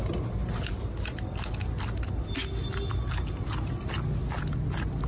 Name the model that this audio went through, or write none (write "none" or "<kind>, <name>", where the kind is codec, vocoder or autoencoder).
none